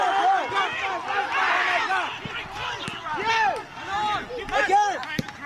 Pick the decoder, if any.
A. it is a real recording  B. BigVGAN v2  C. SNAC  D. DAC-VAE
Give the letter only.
A